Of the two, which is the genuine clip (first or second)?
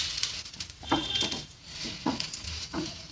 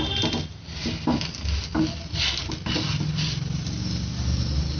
second